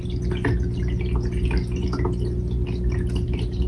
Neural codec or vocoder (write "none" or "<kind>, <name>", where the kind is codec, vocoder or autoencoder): none